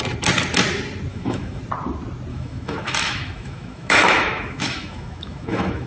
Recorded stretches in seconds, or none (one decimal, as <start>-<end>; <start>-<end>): 0.0-1.1; 1.6-2.3